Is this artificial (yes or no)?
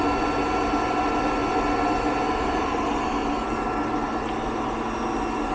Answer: no